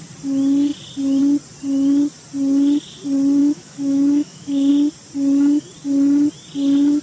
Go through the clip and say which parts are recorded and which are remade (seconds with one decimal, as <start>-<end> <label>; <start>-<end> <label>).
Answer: 0.0-3.4 recorded; 3.4-4.7 remade; 4.7-7.0 recorded